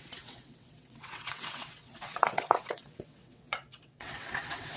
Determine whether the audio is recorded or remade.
remade